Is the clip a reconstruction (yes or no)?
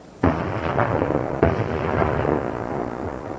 yes